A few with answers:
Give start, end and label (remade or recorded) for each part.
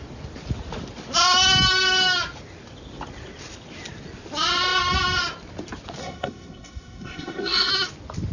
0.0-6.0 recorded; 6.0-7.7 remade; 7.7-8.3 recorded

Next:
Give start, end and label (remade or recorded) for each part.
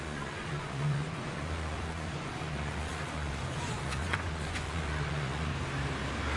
0.0-5.5 remade; 5.5-6.4 recorded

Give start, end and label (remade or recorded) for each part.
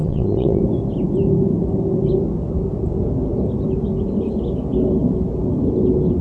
0.0-0.6 remade; 0.6-6.2 recorded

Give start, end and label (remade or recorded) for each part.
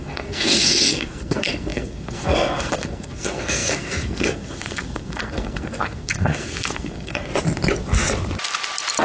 0.0-7.3 remade; 7.3-9.0 recorded